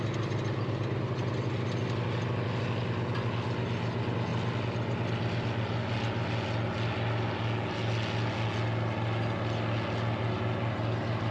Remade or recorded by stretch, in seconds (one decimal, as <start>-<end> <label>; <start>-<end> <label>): 0.0-11.3 recorded